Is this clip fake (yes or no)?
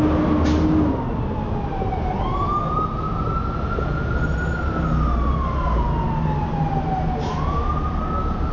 no